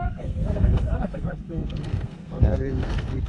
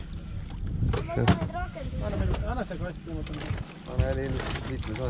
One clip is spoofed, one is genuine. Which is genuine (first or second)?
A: second